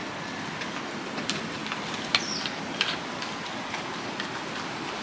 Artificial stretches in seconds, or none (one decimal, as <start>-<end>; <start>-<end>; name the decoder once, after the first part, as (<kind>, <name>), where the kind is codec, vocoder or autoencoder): 0.6-1.6 (vocoder, BigVGAN v2); 4.6-5.0